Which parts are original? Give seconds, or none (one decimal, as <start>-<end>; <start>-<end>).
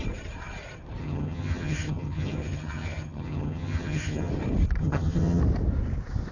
0.0-1.0; 4.3-4.8; 5.4-6.3